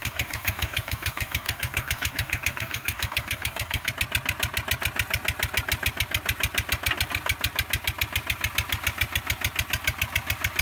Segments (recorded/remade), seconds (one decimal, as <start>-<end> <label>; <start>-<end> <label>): 0.0-3.9 remade; 3.9-10.6 recorded